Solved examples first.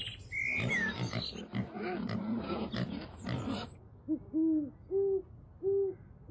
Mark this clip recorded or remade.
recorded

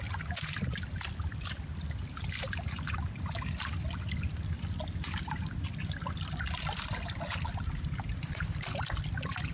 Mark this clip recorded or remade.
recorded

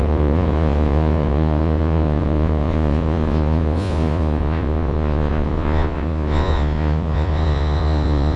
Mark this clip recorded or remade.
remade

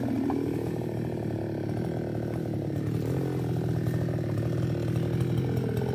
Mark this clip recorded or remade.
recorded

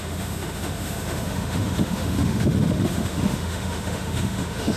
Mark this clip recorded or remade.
remade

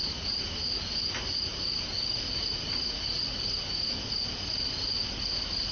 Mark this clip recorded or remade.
recorded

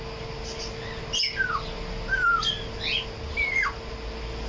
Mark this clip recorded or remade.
recorded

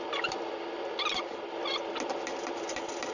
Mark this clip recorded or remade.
recorded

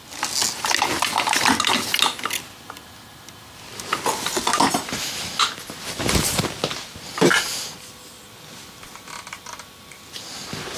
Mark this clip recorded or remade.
recorded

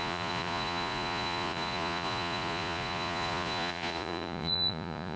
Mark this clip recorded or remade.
remade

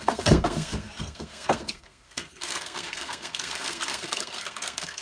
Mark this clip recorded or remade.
remade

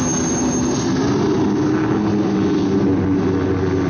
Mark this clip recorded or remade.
recorded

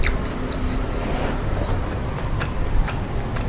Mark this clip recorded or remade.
remade